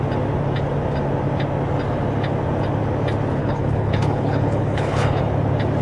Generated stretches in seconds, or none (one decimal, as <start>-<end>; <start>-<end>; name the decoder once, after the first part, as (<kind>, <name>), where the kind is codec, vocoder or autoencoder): 3.4-5.2 (codec, HILCodec)